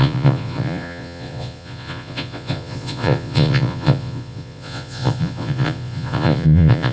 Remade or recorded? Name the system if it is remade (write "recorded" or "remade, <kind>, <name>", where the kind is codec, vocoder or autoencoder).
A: remade, vocoder, Vocos